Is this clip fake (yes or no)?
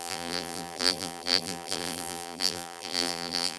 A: yes